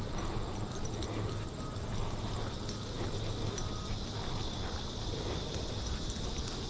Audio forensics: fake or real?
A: real